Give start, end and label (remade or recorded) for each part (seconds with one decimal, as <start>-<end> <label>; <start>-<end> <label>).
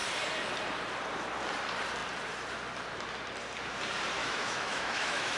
0.0-4.2 recorded; 4.2-5.4 remade